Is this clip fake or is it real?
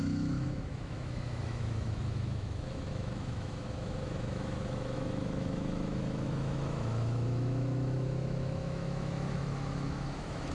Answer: fake